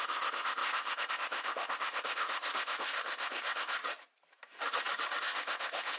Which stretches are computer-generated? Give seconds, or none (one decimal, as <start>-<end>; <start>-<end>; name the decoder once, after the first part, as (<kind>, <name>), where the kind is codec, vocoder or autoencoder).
0.0-3.8 (codec, ZipCodec); 5.2-6.0